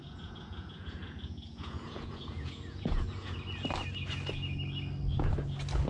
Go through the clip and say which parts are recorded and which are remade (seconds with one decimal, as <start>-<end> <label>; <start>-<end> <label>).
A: 0.0-3.4 remade; 3.4-5.9 recorded